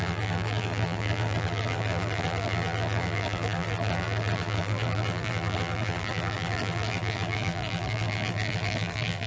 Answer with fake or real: fake